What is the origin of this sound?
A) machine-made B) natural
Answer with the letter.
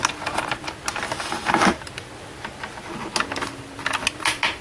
B